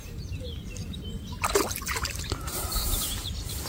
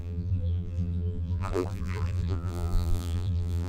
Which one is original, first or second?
first